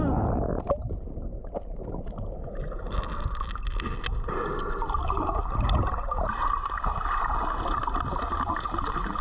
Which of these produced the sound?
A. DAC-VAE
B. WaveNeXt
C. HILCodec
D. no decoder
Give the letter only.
D